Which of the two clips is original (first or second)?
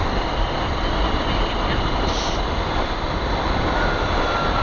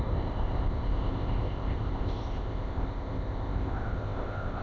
first